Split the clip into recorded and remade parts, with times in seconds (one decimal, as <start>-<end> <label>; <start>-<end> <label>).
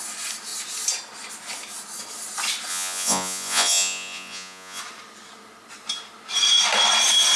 0.0-2.7 recorded; 2.7-4.8 remade; 4.8-7.4 recorded